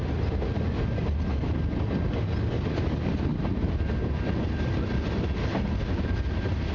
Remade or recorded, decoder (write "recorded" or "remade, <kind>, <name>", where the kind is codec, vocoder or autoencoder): recorded